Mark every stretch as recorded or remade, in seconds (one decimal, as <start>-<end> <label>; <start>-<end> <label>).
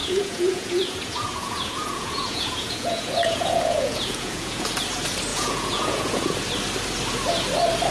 0.0-4.7 remade; 4.7-5.3 recorded; 5.3-6.4 remade; 6.4-7.9 recorded